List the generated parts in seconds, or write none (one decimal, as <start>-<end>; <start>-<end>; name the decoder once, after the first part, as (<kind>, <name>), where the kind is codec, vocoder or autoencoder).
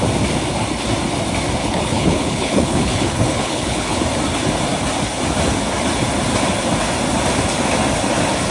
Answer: 1.6-4.0 (codec, HILCodec)